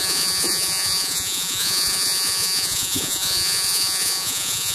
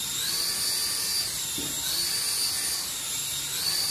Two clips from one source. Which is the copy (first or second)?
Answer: first